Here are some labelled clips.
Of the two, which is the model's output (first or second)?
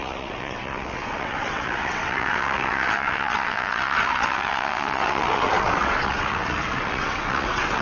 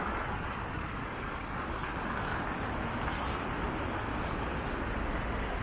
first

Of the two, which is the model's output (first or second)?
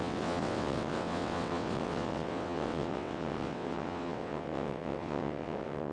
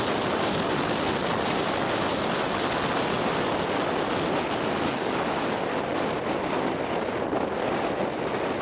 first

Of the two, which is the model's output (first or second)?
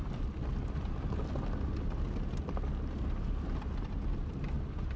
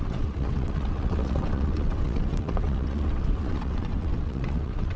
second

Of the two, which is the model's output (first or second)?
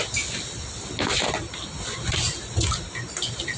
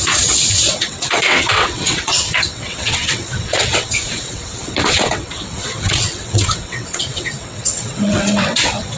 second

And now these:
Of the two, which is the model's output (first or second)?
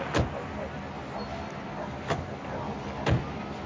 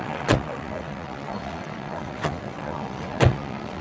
second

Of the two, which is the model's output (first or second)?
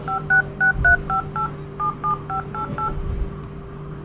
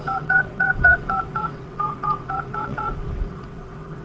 second